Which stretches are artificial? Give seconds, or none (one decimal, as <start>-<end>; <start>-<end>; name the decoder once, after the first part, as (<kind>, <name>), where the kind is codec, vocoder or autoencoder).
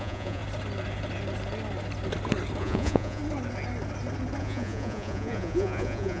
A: 0.0-0.4 (vocoder, Vocos); 2.6-3.2; 4.4-6.2